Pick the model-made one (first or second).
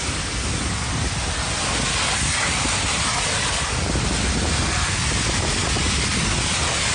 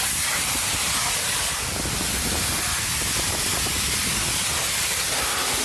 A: second